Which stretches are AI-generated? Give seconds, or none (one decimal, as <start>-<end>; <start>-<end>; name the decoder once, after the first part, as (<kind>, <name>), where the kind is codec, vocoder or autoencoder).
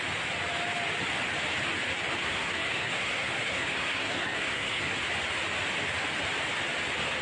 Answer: 2.2-5.0 (codec, SNAC)